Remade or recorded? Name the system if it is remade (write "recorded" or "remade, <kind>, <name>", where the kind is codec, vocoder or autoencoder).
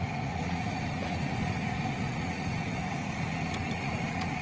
remade, vocoder, Vocos